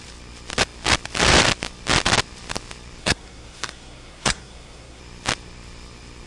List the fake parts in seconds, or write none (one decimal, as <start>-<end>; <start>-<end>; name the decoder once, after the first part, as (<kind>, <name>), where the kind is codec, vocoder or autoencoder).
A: 3.0-5.0 (codec, SNAC)